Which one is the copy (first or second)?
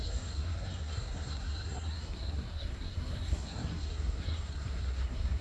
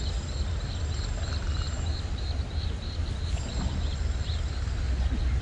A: first